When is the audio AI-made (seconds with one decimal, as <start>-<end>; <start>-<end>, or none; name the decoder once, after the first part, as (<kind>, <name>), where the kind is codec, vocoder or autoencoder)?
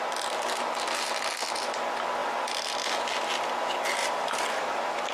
4.0-5.1 (vocoder, BigVGAN v2)